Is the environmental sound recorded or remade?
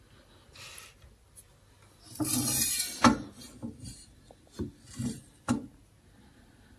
recorded